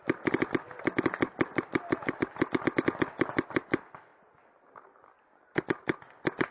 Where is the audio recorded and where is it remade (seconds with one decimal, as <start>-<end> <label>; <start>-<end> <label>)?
0.0-2.1 recorded; 2.1-4.1 remade; 4.1-5.6 recorded; 5.6-6.5 remade